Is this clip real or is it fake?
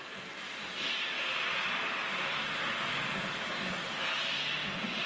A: real